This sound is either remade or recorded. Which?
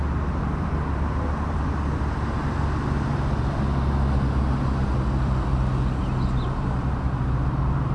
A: recorded